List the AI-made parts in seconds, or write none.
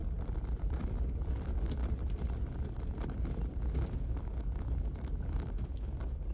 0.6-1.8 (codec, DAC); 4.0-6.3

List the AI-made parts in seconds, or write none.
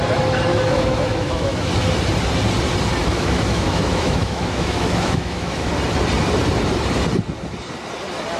0.5-1.7 (autoencoder, DAC-VAE); 3.0-5.7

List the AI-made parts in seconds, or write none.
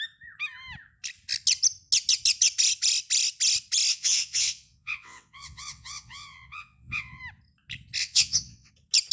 3.9-7.2 (vocoder, WaveNeXt); 8.0-8.7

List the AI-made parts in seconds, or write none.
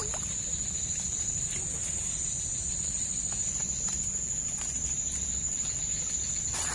none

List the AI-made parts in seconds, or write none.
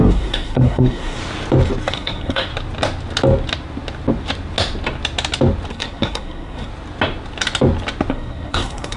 0.0-1.2 (codec, SNAC); 1.9-2.5; 5.7-6.7; 8.1-9.0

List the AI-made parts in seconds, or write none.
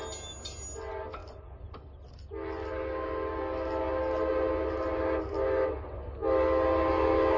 none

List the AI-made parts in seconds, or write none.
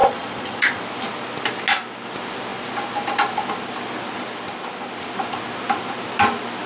0.0-0.8 (vocoder, Vocos)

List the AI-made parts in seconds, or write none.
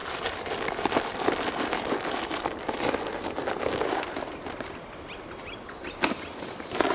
none